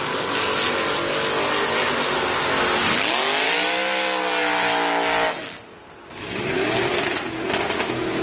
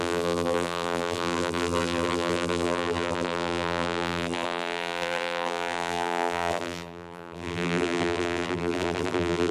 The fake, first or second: second